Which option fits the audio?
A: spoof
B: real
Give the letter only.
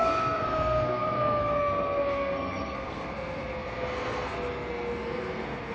A